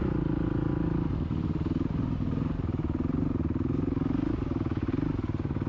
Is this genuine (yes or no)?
yes